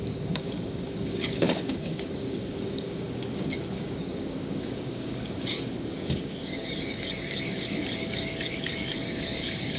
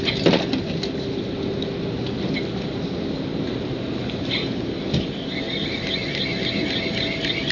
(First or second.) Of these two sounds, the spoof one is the first